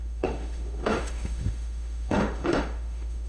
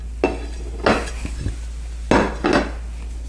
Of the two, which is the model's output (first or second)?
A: first